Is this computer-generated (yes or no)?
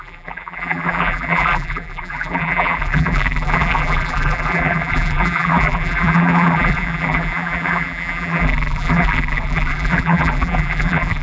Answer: yes